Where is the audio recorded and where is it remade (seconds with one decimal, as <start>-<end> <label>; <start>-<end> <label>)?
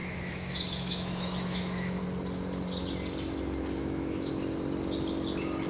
0.0-2.0 remade; 2.0-3.8 recorded; 3.8-4.3 remade; 4.3-5.7 recorded